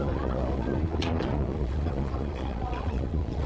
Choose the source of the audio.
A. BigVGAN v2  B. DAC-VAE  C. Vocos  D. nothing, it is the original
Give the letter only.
C